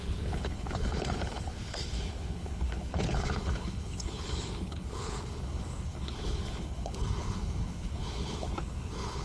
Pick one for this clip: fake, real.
fake